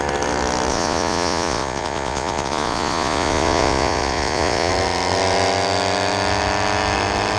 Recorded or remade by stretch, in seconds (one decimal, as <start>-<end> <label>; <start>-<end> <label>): 0.0-0.7 recorded; 0.7-4.7 remade; 4.7-7.4 recorded